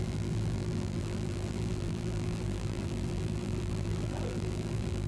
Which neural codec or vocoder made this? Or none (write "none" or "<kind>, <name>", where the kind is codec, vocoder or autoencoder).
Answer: vocoder, BigVGAN v2